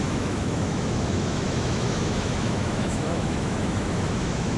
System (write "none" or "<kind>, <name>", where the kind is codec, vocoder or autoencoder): autoencoder, DAC-VAE